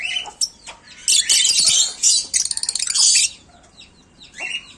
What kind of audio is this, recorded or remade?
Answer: recorded